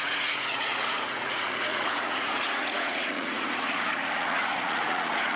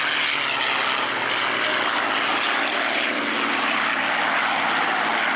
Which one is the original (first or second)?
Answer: second